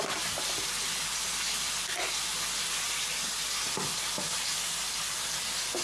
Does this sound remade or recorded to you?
recorded